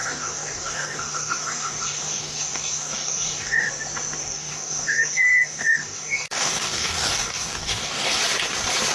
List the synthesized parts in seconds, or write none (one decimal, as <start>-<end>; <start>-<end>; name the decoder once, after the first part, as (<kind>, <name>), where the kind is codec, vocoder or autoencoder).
0.0-3.7 (codec, DAC); 4.2-8.2